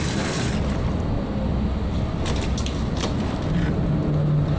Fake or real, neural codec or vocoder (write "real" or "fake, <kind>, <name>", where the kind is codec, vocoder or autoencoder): real